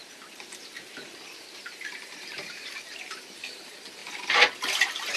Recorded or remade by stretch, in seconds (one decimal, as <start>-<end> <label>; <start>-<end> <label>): 0.0-5.2 remade